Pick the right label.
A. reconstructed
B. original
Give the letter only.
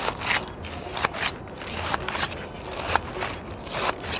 B